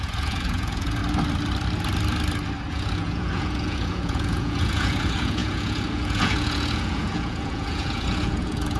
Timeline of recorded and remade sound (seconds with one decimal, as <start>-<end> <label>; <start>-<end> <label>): 0.0-1.0 remade; 1.0-2.7 recorded; 2.7-8.8 remade

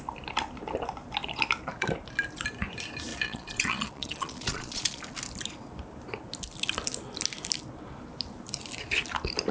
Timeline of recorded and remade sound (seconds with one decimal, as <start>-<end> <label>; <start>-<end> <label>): 0.0-3.1 recorded; 3.1-5.0 remade; 5.0-9.5 recorded

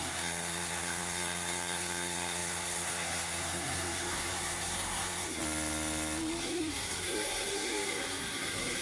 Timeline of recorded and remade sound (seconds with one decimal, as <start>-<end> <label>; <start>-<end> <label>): 0.0-5.4 remade; 5.4-6.4 recorded; 6.4-8.8 remade

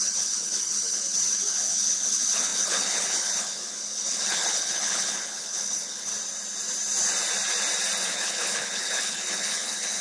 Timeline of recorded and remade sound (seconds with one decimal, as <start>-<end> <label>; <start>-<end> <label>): 0.0-6.1 remade; 6.1-8.1 recorded; 8.1-10.0 remade